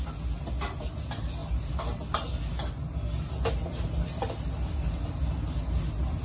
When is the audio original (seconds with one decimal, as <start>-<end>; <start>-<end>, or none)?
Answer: 0.0-6.2